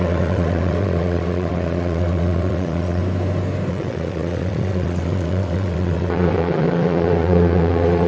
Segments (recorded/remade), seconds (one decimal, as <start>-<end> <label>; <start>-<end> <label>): 0.0-3.0 remade; 3.0-3.7 recorded; 3.7-8.1 remade